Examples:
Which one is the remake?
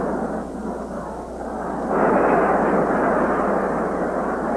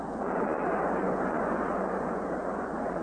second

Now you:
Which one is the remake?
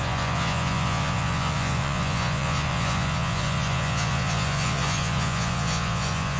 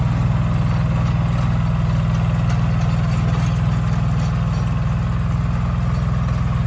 first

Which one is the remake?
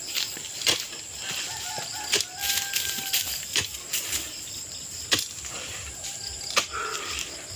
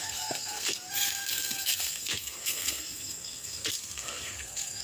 second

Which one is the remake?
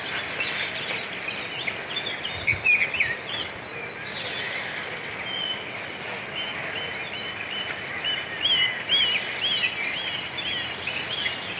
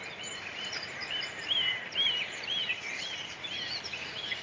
second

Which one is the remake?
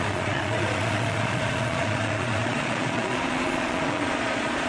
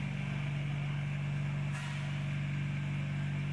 first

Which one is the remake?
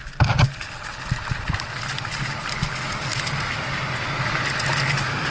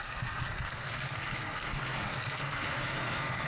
second